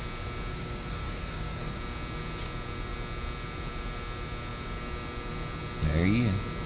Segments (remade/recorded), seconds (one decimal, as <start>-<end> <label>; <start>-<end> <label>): 0.0-0.5 recorded; 0.5-1.8 remade; 1.8-6.7 recorded